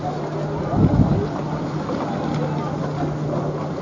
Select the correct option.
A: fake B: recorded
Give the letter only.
B